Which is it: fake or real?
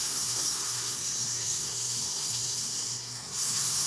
fake